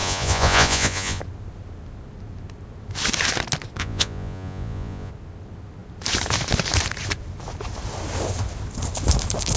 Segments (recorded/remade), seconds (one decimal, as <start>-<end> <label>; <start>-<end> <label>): 0.0-1.2 remade; 1.2-3.8 recorded; 3.8-5.1 remade; 5.1-9.6 recorded